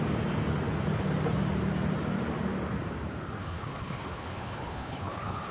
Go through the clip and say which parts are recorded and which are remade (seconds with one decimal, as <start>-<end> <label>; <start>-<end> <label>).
0.0-3.4 recorded; 3.4-5.5 remade